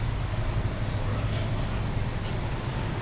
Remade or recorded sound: recorded